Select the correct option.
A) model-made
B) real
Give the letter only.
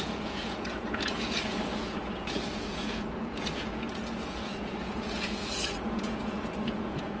A